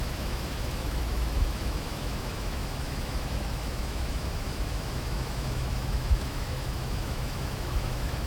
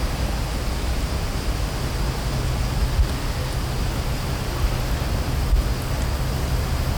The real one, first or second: second